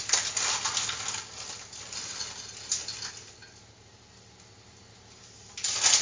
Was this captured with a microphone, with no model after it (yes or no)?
yes